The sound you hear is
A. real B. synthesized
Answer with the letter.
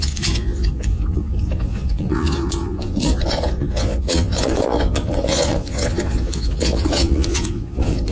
B